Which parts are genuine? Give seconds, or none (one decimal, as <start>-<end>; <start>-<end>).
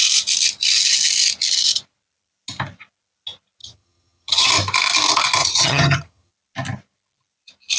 0.0-3.6; 4.5-5.4; 6.3-7.8